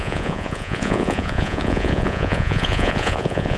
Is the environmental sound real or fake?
fake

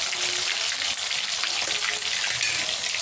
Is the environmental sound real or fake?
real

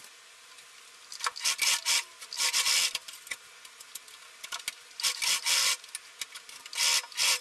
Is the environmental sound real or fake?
real